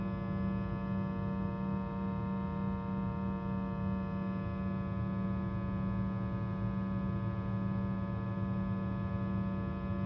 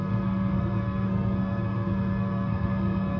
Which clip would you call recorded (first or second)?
first